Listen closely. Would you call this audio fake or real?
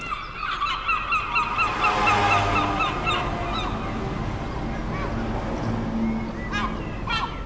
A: real